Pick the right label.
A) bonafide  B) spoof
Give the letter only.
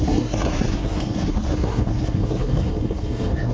B